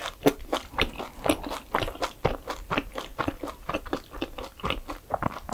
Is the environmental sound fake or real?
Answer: real